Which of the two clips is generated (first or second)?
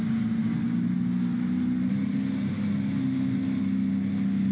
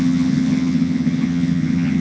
second